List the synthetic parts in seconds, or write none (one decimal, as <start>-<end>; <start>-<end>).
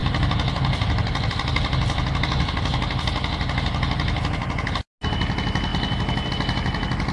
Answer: none